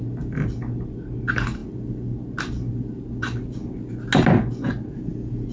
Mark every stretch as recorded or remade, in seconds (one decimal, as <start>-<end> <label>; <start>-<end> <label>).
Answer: 0.0-5.5 recorded